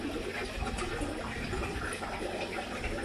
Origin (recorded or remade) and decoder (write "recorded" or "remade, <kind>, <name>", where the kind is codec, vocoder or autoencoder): recorded